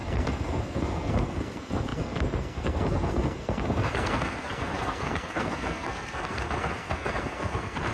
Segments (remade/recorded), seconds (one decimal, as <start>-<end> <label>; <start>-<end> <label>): 0.0-7.9 remade